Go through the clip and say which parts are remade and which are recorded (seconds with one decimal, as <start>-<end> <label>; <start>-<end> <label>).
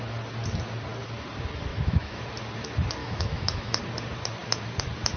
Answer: 0.0-1.7 recorded; 1.7-2.2 remade; 2.2-3.0 recorded; 3.0-3.8 remade; 3.8-5.2 recorded